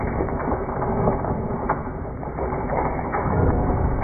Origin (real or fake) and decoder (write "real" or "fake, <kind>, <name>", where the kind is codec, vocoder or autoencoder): fake, autoencoder, DAC-VAE